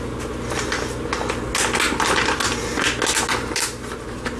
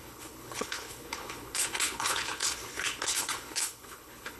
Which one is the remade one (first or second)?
second